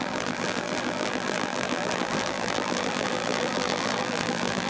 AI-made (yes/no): yes